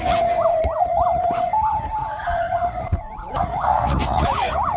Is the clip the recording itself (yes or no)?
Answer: no